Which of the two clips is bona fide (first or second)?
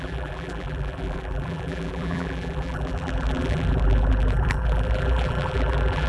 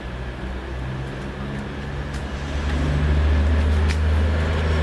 second